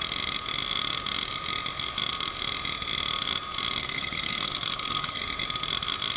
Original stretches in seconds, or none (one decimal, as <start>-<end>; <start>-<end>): 0.0-3.8; 5.2-6.2